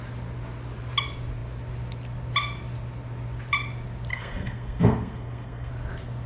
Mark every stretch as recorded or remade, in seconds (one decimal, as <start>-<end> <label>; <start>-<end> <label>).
0.0-4.1 recorded; 4.1-5.7 remade; 5.7-6.3 recorded